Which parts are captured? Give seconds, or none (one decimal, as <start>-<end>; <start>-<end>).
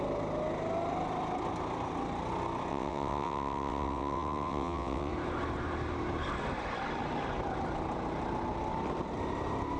0.0-2.7; 5.1-9.8